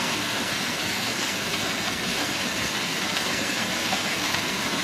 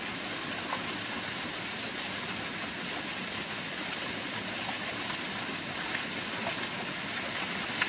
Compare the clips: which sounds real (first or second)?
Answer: second